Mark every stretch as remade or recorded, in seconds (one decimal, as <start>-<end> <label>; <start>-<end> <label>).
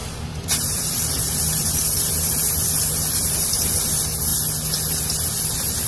0.0-3.5 remade; 3.5-5.9 recorded